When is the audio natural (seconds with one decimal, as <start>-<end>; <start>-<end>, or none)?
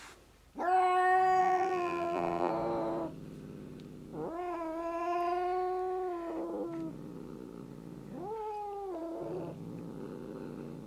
0.0-1.4; 2.5-10.9